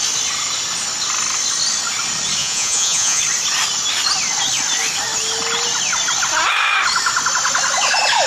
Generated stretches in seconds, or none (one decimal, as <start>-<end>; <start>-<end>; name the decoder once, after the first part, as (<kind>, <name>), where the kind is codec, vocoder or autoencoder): 2.4-3.2 (vocoder, Vocos)